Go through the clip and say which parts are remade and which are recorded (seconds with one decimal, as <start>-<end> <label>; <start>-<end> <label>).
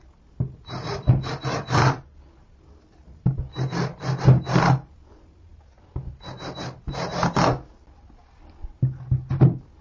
0.0-9.8 recorded